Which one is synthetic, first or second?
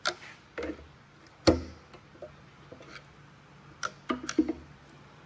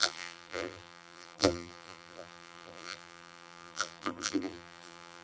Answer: second